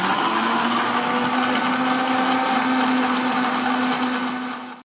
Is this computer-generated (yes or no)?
no